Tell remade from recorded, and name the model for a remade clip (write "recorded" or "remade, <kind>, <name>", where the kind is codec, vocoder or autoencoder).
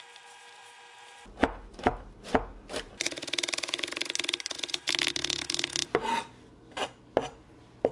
recorded